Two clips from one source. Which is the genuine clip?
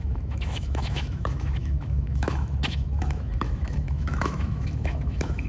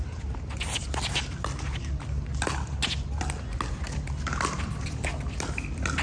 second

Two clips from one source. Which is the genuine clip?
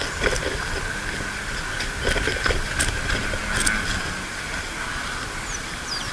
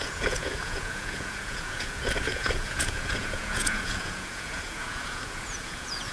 first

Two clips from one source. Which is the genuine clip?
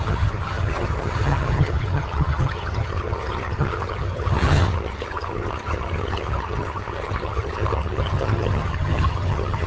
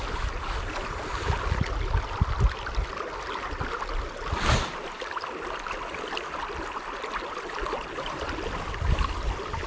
second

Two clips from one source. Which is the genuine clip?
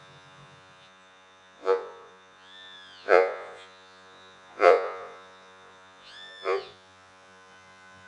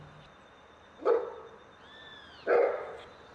second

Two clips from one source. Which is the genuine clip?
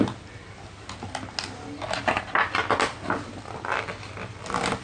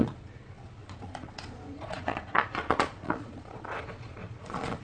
first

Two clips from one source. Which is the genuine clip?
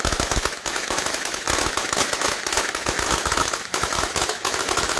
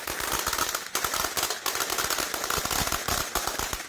second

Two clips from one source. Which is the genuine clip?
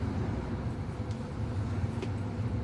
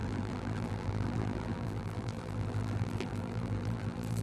first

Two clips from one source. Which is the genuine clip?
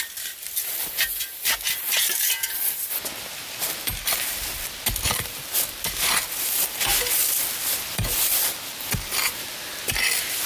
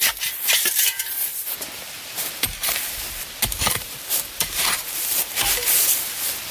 first